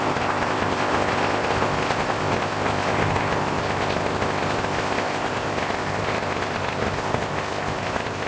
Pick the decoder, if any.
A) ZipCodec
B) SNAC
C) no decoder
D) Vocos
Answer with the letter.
A